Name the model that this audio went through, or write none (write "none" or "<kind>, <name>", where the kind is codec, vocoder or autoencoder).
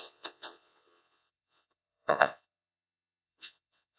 vocoder, WaveNeXt